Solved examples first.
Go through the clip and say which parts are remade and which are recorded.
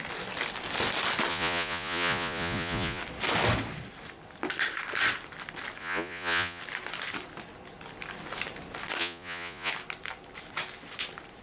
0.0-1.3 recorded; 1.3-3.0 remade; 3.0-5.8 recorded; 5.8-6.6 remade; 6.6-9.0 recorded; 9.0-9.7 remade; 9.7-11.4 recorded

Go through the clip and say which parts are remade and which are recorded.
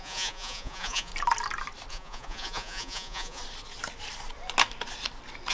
0.0-1.1 remade; 1.1-1.9 recorded; 1.9-3.4 remade; 3.4-5.5 recorded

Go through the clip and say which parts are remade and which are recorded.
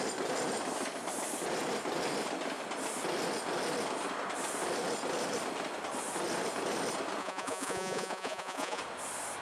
0.0-7.2 recorded; 7.2-8.8 remade; 8.8-9.4 recorded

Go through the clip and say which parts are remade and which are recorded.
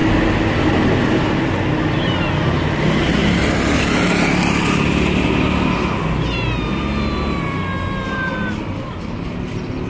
0.0-9.9 recorded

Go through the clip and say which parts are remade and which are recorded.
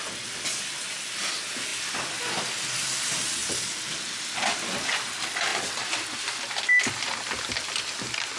0.0-8.4 recorded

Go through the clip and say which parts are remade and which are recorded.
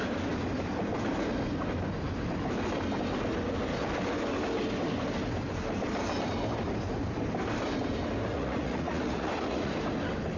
0.0-8.3 recorded; 8.3-9.7 remade; 9.7-10.4 recorded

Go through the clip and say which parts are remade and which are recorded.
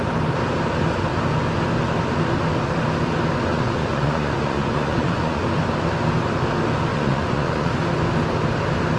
0.0-3.5 recorded; 3.5-5.4 remade; 5.4-6.9 recorded; 6.9-7.7 remade; 7.7-9.0 recorded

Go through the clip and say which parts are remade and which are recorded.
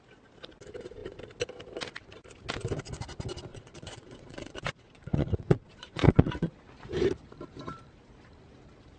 0.0-3.5 recorded; 3.5-6.6 remade; 6.6-9.0 recorded